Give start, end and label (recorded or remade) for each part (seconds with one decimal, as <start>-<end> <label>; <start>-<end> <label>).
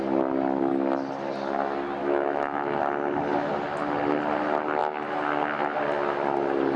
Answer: 0.0-2.0 recorded; 2.0-2.8 remade; 2.8-6.8 recorded